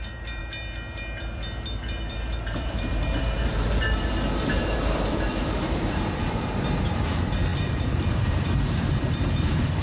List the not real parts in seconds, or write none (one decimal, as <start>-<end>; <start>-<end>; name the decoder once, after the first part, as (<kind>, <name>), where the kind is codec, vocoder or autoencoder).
0.0-0.4 (vocoder, BigVGAN v2); 2.1-9.8